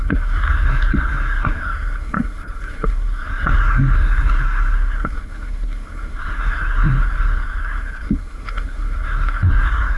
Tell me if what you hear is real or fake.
fake